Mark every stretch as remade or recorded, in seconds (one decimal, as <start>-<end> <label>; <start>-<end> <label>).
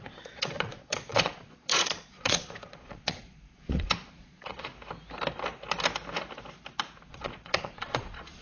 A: 0.0-4.7 remade; 4.7-7.1 recorded; 7.1-8.4 remade